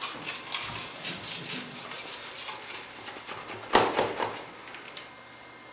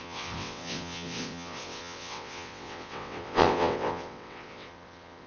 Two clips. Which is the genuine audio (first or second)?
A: first